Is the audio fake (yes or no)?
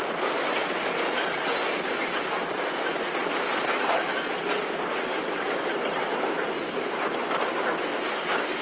no